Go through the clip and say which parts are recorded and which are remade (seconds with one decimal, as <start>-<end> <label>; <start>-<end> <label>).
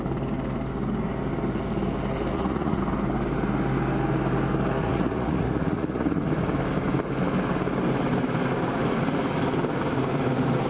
0.0-2.3 recorded; 2.3-2.8 remade; 2.8-4.8 recorded; 4.8-6.2 remade; 6.2-10.7 recorded